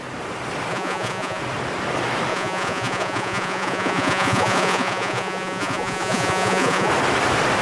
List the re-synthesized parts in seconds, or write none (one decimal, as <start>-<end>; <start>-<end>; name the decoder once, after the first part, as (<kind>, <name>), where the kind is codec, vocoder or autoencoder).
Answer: 0.7-1.4 (vocoder, Vocos); 2.3-6.9